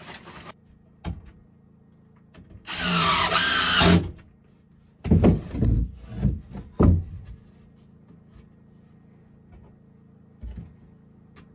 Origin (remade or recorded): recorded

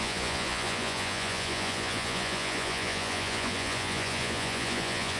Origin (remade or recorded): remade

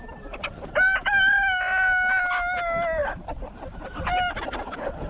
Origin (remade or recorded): recorded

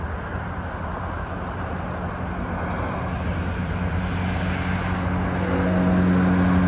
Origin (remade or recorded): recorded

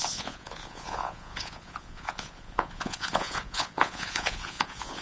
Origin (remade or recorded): remade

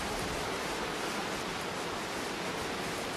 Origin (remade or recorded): recorded